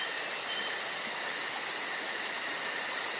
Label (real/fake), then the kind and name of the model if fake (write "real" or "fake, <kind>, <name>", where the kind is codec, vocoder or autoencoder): real